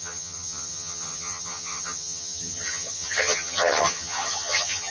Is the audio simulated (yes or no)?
yes